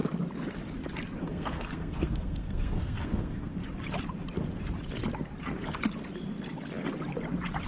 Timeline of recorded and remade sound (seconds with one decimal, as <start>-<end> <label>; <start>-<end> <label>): 0.0-1.2 recorded; 1.2-3.6 remade; 3.6-7.7 recorded